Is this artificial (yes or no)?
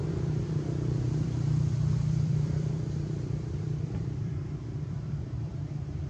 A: yes